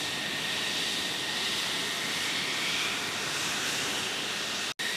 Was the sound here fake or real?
real